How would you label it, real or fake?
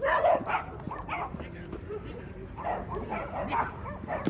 fake